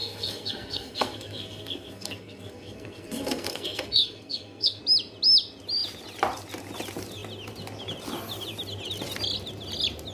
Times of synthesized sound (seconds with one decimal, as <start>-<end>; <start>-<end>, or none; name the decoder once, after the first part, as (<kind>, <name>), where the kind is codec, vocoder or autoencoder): 0.0-4.8 (codec, SNAC)